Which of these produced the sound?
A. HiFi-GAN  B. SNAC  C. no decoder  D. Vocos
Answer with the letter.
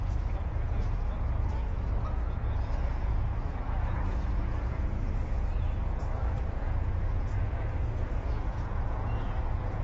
D